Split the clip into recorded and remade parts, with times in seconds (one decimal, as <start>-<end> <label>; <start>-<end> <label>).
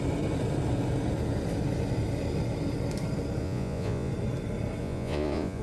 0.0-3.4 recorded; 3.4-4.1 remade; 4.1-4.8 recorded; 4.8-5.6 remade